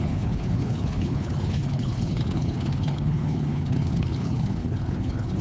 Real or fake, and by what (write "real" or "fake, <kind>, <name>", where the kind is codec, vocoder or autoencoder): fake, codec, HILCodec